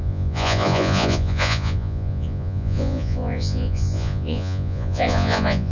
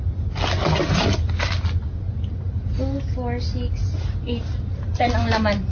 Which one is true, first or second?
second